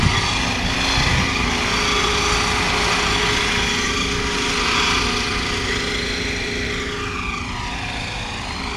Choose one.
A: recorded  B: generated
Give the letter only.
A